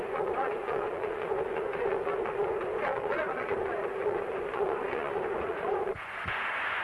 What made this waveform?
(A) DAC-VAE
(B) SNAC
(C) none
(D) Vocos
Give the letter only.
D